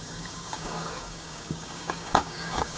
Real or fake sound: fake